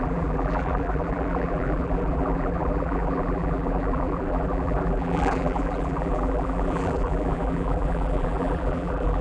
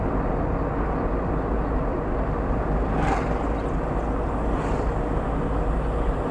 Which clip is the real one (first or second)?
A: second